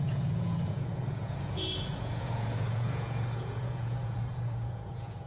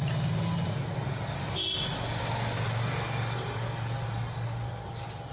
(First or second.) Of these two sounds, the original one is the second